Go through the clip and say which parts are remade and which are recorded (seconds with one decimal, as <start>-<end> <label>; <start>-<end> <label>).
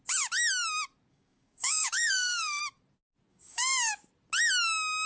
0.0-1.1 recorded; 1.1-2.6 remade; 2.6-3.3 recorded; 3.3-3.9 remade; 3.9-5.1 recorded